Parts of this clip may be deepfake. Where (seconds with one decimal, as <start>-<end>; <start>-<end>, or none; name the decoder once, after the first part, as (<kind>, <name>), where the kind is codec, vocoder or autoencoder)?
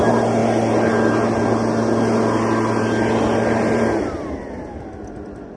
none